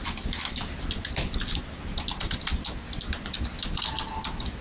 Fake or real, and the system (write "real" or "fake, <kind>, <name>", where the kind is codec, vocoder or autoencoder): real